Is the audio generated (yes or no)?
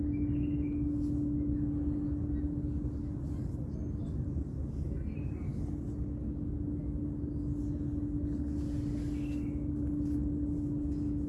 no